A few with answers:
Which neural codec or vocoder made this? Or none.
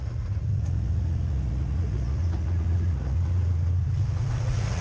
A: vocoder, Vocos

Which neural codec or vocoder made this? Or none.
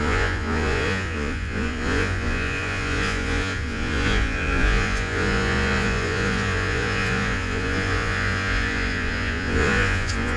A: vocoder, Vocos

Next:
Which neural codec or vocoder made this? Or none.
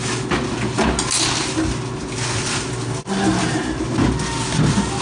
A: none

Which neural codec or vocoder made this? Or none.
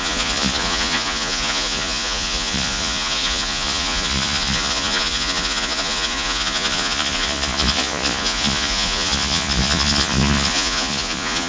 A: vocoder, Vocos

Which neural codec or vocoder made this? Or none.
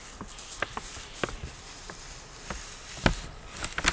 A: none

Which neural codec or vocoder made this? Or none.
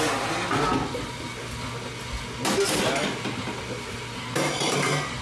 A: none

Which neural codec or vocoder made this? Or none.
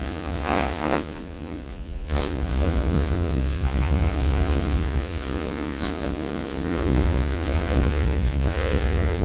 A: vocoder, Vocos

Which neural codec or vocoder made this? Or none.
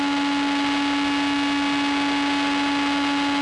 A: none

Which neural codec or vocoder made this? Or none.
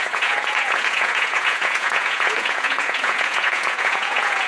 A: vocoder, Vocos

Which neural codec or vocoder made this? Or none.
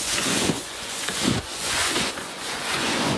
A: vocoder, Vocos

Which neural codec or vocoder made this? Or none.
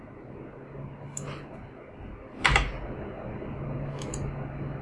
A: none